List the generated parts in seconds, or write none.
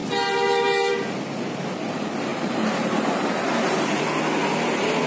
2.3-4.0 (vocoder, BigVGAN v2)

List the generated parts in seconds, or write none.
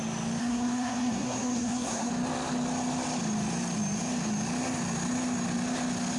0.4-2.1 (codec, SNAC)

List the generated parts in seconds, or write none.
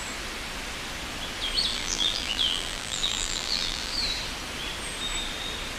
1.7-3.9 (vocoder, BigVGAN v2)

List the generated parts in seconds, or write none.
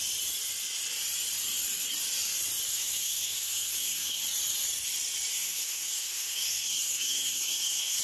2.7-4.2 (codec, SNAC); 5.3-8.0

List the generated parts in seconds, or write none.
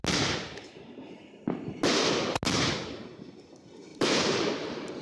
3.9-5.0 (vocoder, BigVGAN v2)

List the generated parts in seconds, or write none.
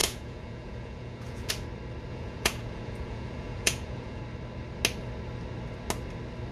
0.0-1.5 (vocoder, Vocos); 2.1-4.2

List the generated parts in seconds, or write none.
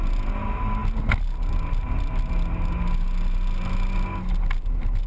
none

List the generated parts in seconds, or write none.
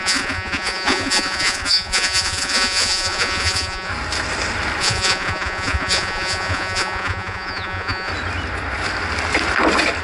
0.0-3.9 (vocoder, Vocos); 4.8-8.1